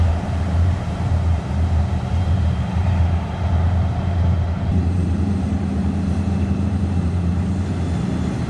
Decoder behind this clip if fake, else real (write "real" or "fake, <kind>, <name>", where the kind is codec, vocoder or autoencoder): fake, vocoder, BigVGAN v2